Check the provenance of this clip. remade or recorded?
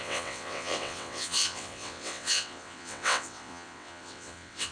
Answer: remade